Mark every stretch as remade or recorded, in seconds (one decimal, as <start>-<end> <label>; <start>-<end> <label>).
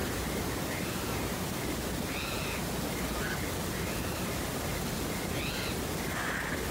0.0-6.7 recorded